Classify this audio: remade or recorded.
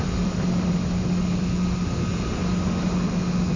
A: recorded